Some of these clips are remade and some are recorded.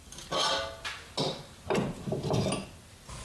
recorded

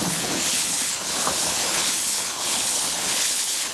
remade